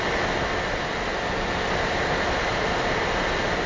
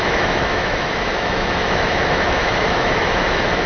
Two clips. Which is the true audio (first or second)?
first